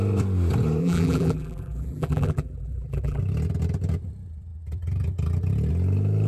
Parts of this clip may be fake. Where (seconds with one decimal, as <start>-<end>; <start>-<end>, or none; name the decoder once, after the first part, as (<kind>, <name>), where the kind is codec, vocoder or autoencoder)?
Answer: 0.8-3.2 (vocoder, BigVGAN v2)